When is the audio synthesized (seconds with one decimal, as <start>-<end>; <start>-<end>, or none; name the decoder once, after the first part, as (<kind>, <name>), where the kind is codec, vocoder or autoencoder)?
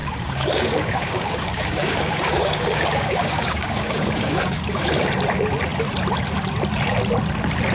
0.0-4.6 (codec, DAC)